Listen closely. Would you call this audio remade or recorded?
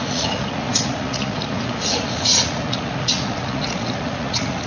remade